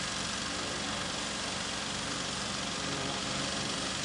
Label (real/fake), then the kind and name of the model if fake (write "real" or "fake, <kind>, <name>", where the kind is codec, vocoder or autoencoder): fake, vocoder, BigVGAN v2